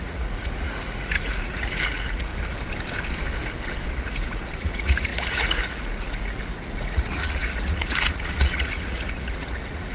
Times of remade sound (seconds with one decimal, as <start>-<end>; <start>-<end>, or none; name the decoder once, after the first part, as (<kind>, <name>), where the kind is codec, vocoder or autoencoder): 0.0-2.3 (vocoder, Vocos); 4.0-9.9